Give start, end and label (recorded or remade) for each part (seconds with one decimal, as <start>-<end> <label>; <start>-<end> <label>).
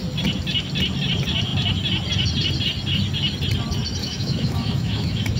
0.0-4.0 recorded; 4.0-5.4 remade